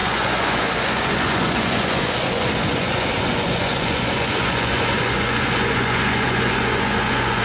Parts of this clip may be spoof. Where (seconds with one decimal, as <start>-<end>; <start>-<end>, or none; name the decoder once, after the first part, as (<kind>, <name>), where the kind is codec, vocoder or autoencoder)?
0.0-7.4 (vocoder, Vocos)